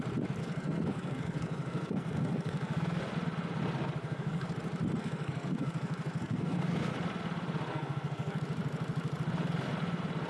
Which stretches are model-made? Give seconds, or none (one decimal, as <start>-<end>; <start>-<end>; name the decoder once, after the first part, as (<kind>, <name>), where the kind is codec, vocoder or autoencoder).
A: 0.4-3.0 (codec, SNAC); 4.0-4.5; 5.0-6.9; 7.7-8.4